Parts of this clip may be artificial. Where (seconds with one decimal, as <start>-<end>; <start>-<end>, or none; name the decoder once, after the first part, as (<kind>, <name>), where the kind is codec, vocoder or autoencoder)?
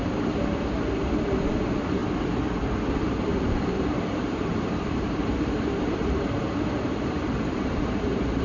0.0-2.0 (vocoder, BigVGAN v2); 2.9-8.4